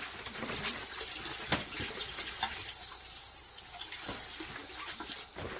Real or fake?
real